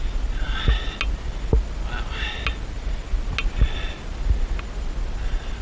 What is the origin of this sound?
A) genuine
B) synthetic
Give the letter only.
A